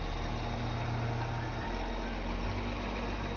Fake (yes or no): no